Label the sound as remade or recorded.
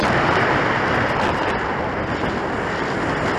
recorded